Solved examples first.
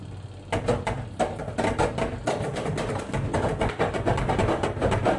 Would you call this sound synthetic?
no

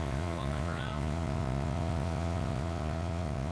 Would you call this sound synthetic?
yes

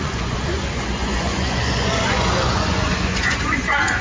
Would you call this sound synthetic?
yes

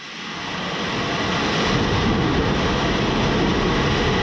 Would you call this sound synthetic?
no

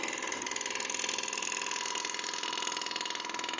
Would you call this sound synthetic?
no